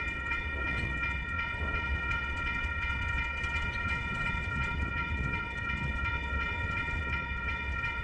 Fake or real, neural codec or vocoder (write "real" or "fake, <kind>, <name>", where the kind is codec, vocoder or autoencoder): fake, vocoder, WaveNeXt